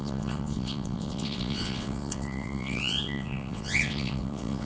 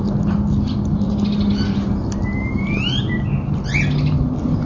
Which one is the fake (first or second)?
first